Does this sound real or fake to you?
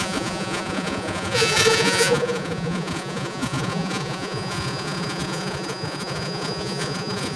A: fake